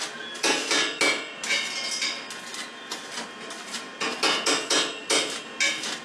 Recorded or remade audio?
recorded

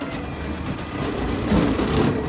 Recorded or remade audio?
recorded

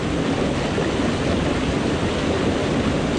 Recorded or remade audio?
recorded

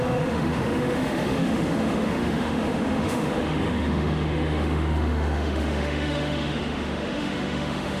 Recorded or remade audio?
remade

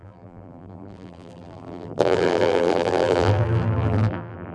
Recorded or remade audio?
remade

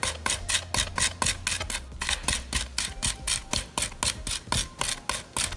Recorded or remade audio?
recorded